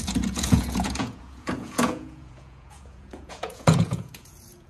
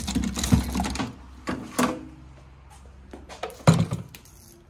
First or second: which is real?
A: second